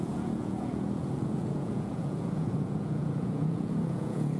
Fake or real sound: fake